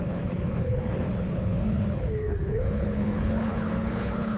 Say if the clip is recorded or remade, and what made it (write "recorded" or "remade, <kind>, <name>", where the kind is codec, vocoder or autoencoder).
remade, codec, HILCodec